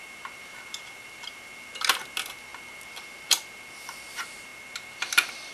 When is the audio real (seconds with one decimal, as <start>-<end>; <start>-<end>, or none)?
0.0-5.5